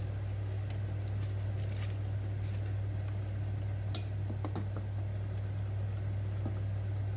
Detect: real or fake real